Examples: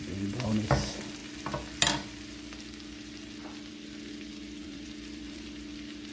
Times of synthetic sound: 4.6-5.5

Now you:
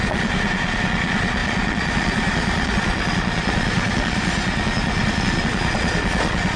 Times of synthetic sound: 0.0-6.6

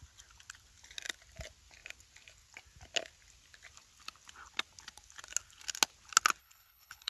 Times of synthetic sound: 6.4-7.1

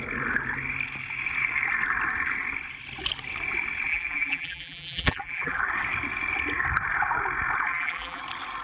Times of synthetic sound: 3.9-5.6; 7.7-8.2

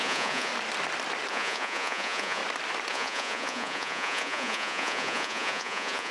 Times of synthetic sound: 0.0-0.5; 1.3-2.4; 2.9-6.1